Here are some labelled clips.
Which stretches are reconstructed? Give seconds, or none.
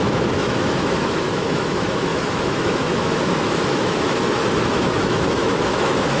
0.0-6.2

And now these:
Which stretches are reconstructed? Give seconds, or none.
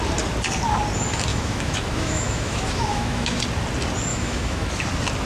1.3-3.4; 4.1-4.7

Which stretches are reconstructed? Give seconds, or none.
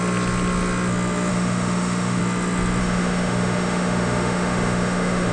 1.3-2.2; 2.8-5.3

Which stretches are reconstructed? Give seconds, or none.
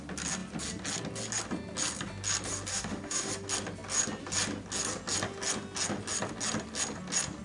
2.7-3.3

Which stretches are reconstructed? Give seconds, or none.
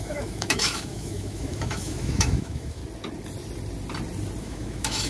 0.0-2.8; 4.4-5.1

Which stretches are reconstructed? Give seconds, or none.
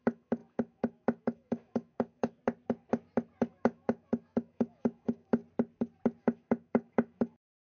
0.0-2.4; 3.5-5.4; 6.2-7.6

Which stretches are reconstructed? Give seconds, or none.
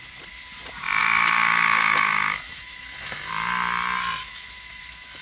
1.0-3.3; 4.2-5.2